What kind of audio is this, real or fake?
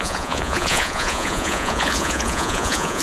fake